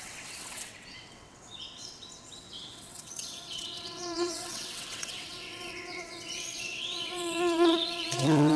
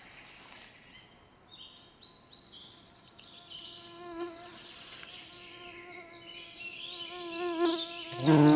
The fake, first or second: first